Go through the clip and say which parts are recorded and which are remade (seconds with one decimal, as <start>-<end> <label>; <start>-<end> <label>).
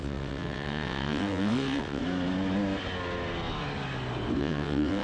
0.0-2.0 remade; 2.0-4.4 recorded; 4.4-5.0 remade